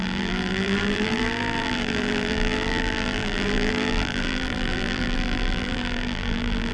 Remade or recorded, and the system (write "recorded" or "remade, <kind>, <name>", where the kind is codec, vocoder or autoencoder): remade, vocoder, BigVGAN v2